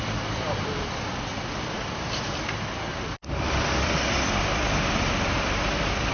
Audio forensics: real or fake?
fake